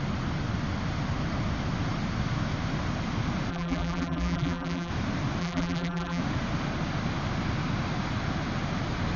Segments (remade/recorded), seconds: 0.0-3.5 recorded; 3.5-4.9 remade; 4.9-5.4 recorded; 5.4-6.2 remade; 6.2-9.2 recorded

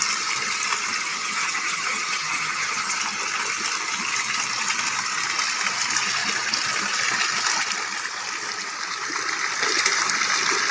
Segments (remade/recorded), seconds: 0.0-1.1 recorded; 1.1-3.0 remade; 3.0-10.7 recorded